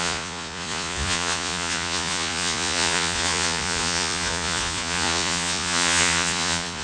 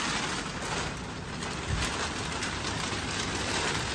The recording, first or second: second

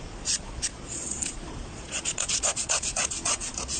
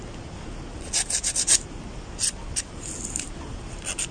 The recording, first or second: second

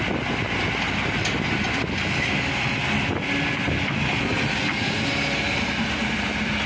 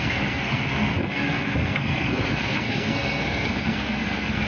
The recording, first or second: first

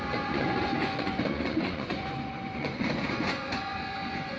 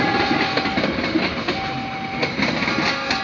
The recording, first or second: second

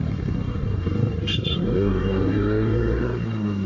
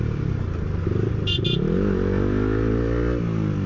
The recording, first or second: second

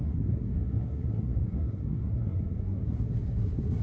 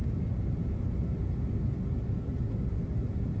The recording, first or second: second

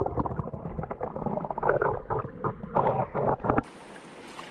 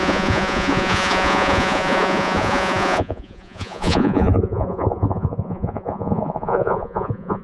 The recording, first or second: first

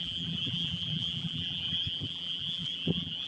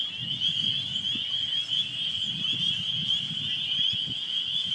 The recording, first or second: second